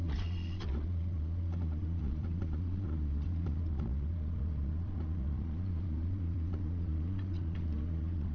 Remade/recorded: remade